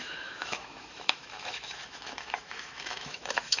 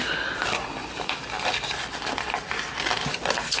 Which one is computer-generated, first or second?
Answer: first